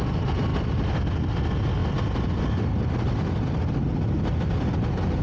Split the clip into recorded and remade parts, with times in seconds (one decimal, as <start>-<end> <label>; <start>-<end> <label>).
0.0-5.2 recorded